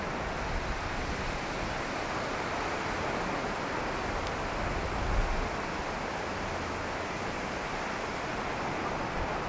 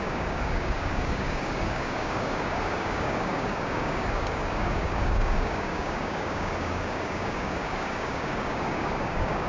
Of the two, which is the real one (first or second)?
first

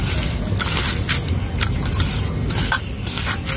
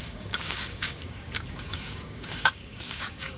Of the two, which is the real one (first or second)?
first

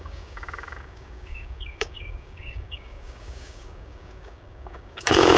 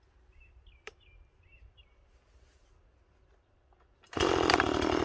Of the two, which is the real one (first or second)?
second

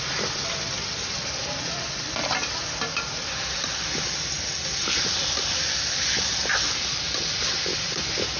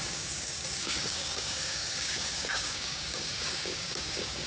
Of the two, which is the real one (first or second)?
first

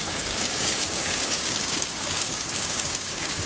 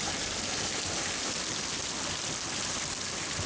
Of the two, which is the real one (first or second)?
second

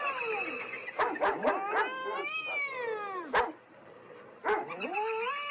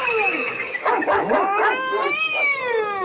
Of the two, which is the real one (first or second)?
first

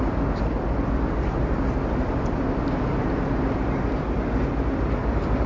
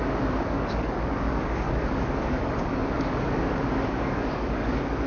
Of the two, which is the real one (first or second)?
first